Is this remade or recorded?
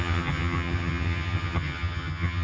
remade